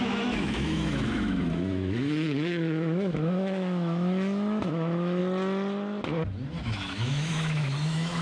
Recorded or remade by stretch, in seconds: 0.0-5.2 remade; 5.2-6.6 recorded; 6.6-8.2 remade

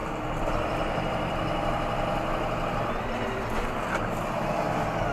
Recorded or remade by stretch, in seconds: 0.0-5.1 recorded

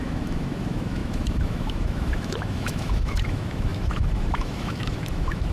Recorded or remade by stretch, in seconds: 0.0-5.5 remade

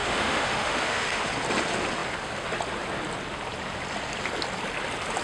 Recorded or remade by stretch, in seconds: 0.0-1.3 remade; 1.3-5.2 recorded

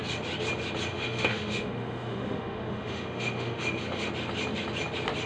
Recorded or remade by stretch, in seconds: 0.0-0.9 recorded; 0.9-4.1 remade; 4.1-5.3 recorded

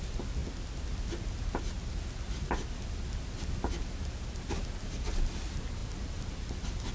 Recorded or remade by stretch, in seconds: 0.0-6.9 recorded

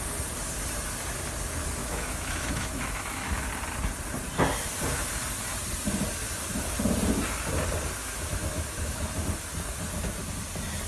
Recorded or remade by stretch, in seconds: 0.0-1.8 recorded; 1.8-3.5 remade; 3.5-8.0 recorded; 8.0-9.0 remade; 9.0-10.9 recorded